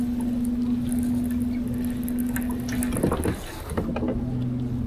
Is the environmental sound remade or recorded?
recorded